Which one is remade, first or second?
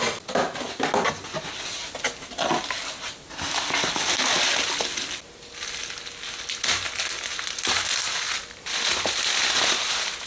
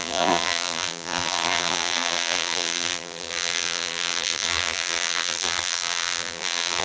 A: second